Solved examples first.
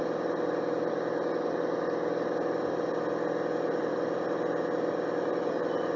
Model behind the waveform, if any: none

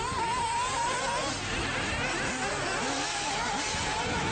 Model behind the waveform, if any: none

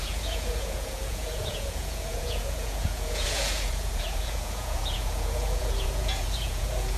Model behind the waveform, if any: vocoder, Vocos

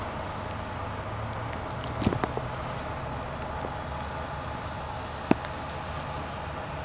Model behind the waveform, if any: none